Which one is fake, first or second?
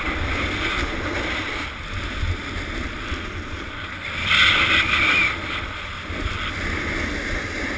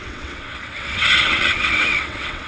second